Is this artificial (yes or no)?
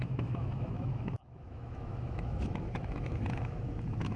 yes